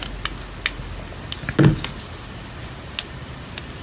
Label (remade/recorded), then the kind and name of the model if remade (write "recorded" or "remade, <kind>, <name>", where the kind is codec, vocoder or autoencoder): recorded